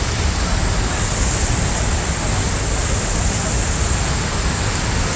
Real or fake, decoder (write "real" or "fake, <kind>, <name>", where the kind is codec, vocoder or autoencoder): real